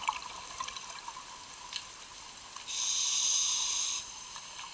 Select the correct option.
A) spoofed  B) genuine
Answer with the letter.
B